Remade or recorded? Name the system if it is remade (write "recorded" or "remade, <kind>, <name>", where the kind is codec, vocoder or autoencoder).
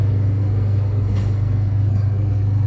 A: remade, codec, SNAC